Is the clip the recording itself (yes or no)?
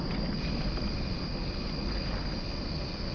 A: yes